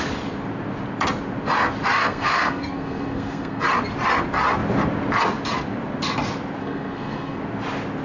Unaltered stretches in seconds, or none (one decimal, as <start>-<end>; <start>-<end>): 0.0-2.0; 3.6-6.6; 7.4-8.0